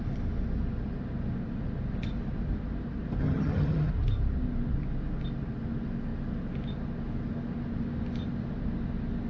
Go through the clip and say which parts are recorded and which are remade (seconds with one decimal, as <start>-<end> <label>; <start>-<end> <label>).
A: 0.0-3.2 recorded; 3.2-3.9 remade; 3.9-9.3 recorded